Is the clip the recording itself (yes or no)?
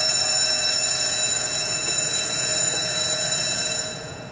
no